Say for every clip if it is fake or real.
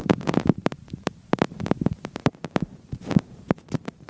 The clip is fake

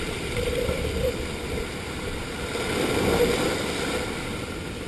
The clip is fake